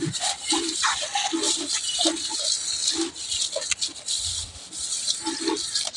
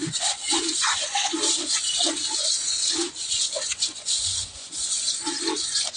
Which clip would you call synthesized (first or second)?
second